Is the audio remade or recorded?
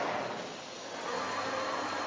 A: recorded